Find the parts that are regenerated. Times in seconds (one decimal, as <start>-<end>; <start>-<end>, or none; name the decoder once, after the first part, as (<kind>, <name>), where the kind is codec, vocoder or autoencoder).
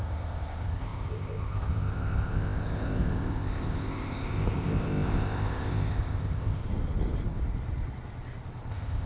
0.0-6.6 (codec, ZipCodec); 8.7-9.1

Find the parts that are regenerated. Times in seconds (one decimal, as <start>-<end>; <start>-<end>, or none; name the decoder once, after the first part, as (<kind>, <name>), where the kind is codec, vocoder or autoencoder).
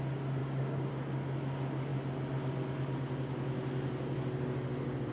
0.4-0.9 (codec, DAC)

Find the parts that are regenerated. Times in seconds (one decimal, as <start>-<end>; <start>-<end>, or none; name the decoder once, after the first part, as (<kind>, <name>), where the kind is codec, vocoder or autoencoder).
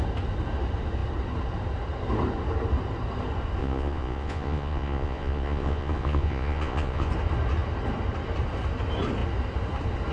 3.6-7.1 (vocoder, Vocos)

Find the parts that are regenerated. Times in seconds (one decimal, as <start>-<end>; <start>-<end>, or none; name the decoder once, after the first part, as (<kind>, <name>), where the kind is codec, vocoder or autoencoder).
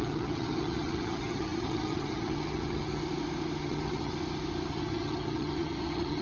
0.0-3.0 (vocoder, HiFi-GAN); 3.6-4.1; 4.7-6.2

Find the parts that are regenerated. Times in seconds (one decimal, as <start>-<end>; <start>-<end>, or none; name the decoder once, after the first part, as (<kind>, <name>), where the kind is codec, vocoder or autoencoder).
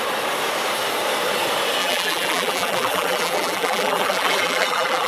1.8-5.1 (vocoder, BigVGAN v2)